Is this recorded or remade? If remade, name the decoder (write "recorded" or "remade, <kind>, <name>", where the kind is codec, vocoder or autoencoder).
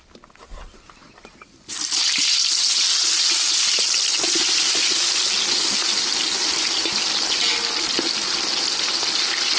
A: recorded